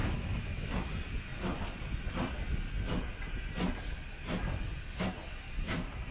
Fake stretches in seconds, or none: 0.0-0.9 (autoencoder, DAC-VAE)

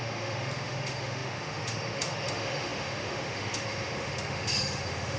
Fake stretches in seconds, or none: 0.0-5.2 (autoencoder, DAC-VAE)

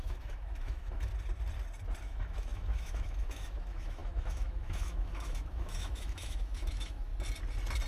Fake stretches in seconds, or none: 0.0-1.1 (autoencoder, DAC-VAE); 2.0-7.1